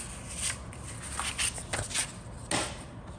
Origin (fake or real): real